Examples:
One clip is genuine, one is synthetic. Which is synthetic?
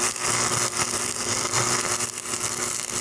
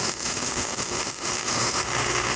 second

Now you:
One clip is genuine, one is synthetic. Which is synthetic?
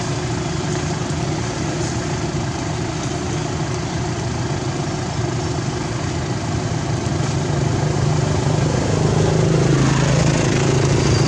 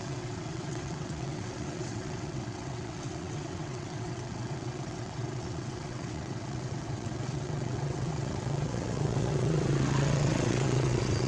second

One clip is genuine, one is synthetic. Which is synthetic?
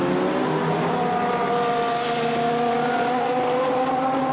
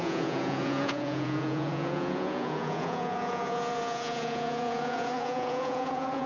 second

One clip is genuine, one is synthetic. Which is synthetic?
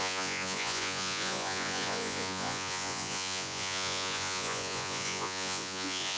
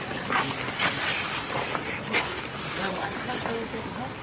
first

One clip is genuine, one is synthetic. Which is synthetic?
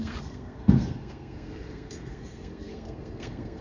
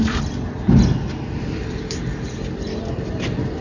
first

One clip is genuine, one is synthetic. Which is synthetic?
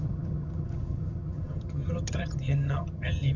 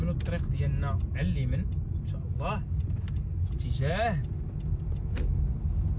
first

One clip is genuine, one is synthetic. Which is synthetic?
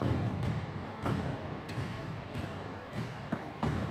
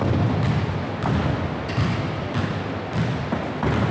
first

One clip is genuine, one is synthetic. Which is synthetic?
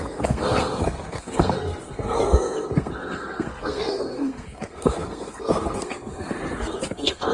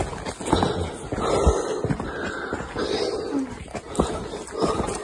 first